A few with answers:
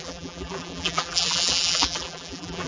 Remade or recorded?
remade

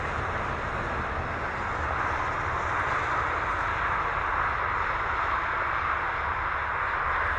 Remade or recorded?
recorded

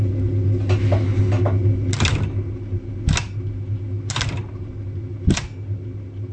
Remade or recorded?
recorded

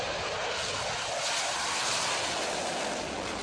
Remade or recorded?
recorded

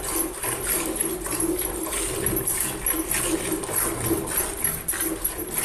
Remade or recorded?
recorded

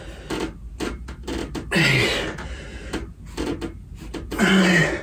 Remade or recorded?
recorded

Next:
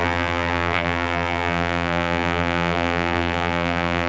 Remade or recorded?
remade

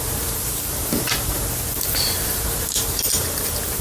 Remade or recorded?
remade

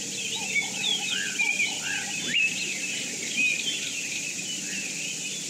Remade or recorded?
recorded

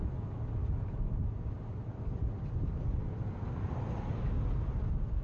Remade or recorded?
recorded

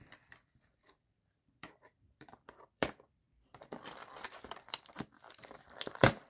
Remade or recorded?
remade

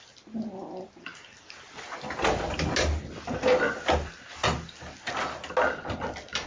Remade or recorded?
recorded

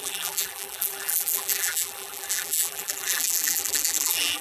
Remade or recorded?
remade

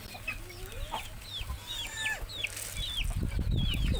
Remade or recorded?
recorded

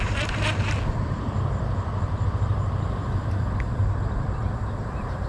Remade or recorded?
remade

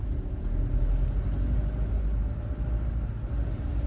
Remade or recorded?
recorded